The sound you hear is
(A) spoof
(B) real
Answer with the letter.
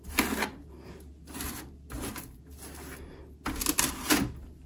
B